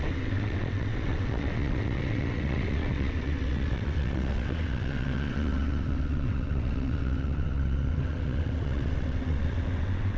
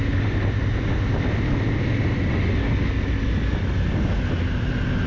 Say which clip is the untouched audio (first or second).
second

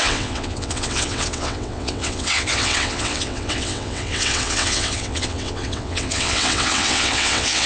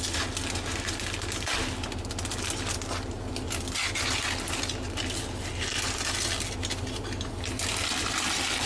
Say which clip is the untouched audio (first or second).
second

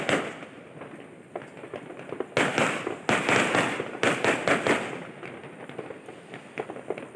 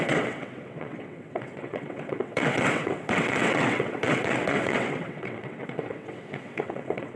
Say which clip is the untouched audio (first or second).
first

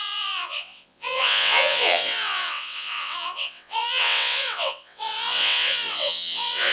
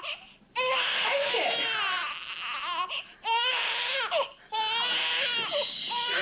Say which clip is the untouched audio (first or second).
second